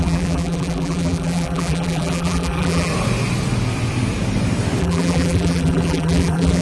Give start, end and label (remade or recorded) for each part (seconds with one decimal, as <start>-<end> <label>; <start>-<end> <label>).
0.0-2.9 remade; 2.9-4.8 recorded; 4.8-6.6 remade

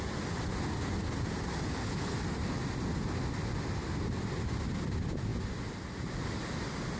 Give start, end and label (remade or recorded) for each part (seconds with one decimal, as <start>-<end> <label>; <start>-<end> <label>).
0.0-7.0 recorded

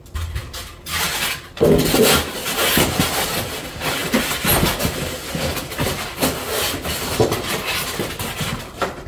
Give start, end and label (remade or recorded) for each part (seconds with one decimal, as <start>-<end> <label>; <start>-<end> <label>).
0.0-9.1 recorded

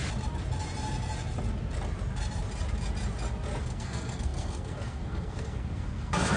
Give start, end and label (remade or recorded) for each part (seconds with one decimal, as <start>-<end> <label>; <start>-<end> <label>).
0.0-3.6 recorded; 3.6-6.4 remade